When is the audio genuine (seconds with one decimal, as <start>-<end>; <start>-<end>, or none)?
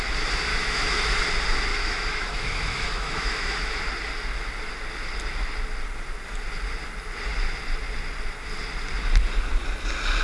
0.0-0.5; 1.2-1.7; 3.8-10.2